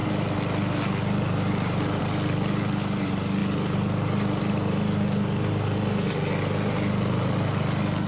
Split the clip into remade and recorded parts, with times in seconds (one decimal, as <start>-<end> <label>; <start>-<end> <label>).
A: 0.0-8.1 recorded